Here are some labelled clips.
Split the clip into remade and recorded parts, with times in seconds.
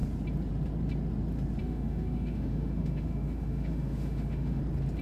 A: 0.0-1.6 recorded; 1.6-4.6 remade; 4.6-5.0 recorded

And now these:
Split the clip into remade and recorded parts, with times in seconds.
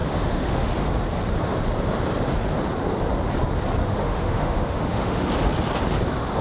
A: 0.0-0.7 remade; 0.7-3.8 recorded; 3.8-5.3 remade; 5.3-6.4 recorded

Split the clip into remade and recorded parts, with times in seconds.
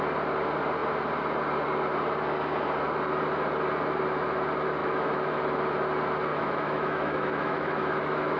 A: 0.0-4.8 recorded; 4.8-5.4 remade; 5.4-6.3 recorded; 6.3-8.4 remade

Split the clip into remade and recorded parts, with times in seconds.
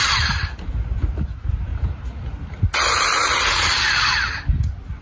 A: 0.0-5.0 recorded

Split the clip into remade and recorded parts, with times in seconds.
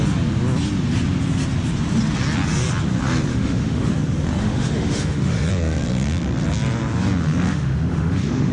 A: 0.0-3.3 recorded; 3.3-3.9 remade; 3.9-4.4 recorded; 4.4-5.5 remade; 5.5-7.5 recorded; 7.5-8.5 remade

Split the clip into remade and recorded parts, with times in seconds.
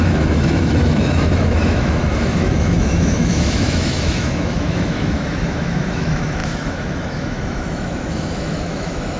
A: 0.0-9.2 remade